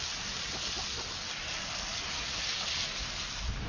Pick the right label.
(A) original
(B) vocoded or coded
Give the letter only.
A